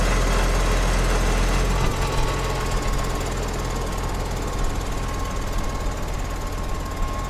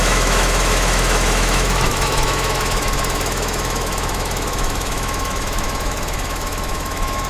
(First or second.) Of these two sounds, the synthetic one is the second